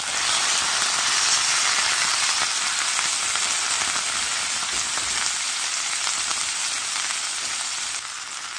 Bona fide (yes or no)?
yes